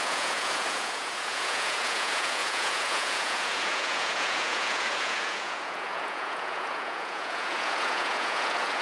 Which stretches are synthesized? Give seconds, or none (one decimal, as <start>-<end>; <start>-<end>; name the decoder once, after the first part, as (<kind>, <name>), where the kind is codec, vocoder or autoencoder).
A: 0.0-8.8 (vocoder, Vocos)